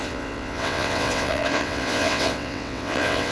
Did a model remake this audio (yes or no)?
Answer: yes